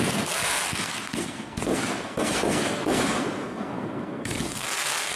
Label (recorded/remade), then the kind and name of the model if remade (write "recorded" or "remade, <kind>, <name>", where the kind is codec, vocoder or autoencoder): remade, codec, SNAC